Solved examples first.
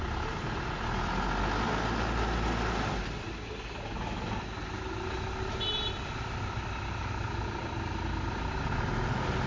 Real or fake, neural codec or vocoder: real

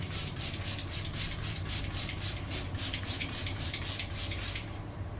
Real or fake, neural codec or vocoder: fake, vocoder, BigVGAN v2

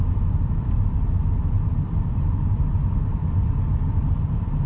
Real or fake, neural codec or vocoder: fake, vocoder, BigVGAN v2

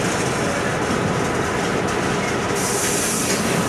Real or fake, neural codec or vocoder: real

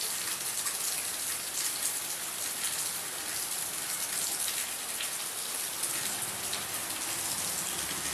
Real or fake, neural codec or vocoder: real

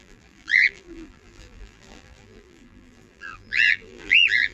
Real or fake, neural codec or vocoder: fake, vocoder, BigVGAN v2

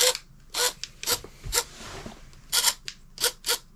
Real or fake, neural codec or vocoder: real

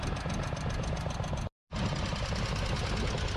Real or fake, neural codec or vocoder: real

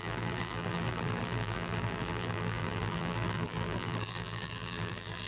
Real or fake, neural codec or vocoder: fake, vocoder, BigVGAN v2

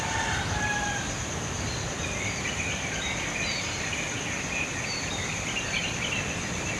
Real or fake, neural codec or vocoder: fake, vocoder, BigVGAN v2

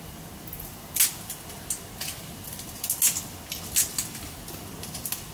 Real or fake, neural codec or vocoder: real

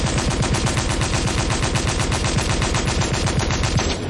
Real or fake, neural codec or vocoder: fake, vocoder, BigVGAN v2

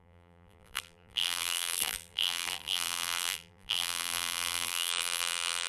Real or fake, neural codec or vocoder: fake, vocoder, BigVGAN v2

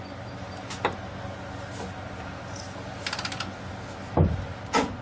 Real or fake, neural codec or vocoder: real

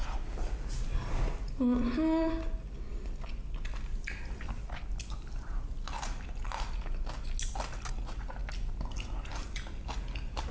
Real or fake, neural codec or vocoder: real